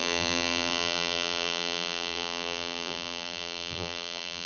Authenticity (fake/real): fake